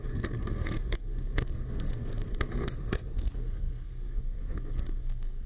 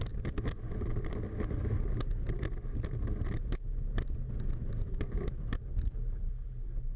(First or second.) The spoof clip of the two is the first